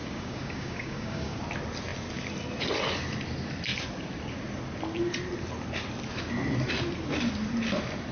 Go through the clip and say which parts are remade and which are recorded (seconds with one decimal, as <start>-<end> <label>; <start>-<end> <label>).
0.0-1.4 remade; 1.4-8.1 recorded